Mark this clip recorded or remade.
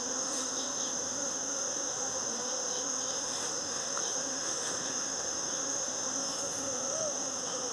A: remade